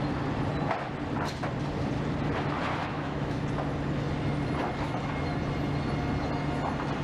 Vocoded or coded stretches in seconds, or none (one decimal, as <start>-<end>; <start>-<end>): 2.8-3.4